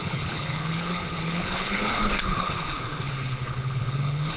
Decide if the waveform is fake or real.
fake